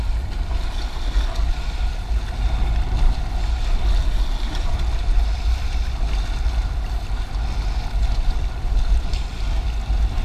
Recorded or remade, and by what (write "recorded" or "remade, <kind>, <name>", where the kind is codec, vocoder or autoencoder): recorded